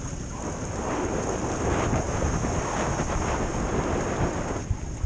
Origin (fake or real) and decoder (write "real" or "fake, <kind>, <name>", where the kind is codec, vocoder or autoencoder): real